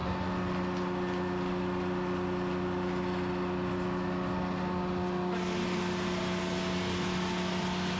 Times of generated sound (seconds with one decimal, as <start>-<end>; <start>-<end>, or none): none